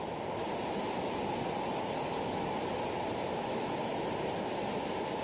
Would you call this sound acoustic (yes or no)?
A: yes